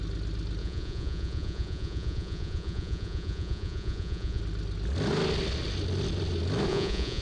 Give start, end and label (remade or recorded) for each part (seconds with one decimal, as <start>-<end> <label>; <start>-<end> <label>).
0.0-0.6 recorded; 0.6-4.4 remade; 4.4-6.7 recorded; 6.7-7.2 remade